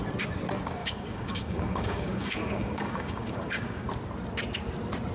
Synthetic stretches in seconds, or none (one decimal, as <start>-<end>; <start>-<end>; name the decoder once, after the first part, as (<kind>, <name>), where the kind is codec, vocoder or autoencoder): 0.8-3.9 (codec, DAC)